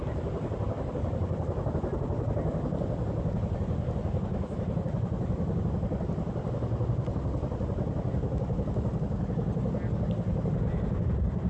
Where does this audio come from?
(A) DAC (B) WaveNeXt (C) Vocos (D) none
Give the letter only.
D